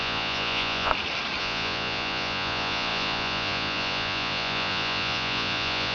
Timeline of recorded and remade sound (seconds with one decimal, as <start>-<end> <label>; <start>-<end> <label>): 0.0-0.9 remade; 0.9-1.4 recorded; 1.4-5.9 remade